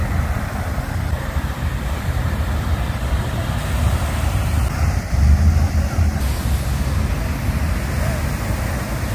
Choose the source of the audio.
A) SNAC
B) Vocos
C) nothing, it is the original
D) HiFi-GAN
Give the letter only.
C